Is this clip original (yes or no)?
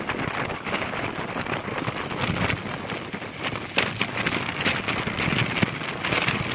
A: yes